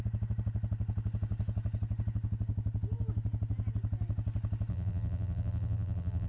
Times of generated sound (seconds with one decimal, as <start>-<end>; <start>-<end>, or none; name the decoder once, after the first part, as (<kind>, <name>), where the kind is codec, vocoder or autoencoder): 4.7-6.3 (vocoder, BigVGAN v2)

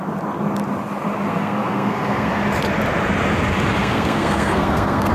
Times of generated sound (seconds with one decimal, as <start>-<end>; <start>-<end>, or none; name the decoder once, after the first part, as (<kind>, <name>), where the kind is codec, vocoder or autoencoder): 1.3-2.3 (codec, SNAC); 3.8-5.1